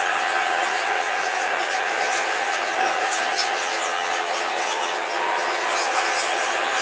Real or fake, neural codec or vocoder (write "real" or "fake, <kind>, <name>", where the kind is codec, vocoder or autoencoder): fake, vocoder, HiFi-GAN